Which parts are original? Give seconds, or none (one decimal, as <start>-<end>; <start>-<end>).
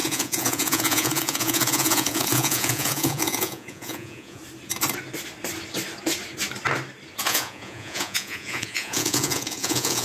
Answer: 4.4-7.2